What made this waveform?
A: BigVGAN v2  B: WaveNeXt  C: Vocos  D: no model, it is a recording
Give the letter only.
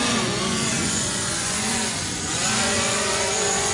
C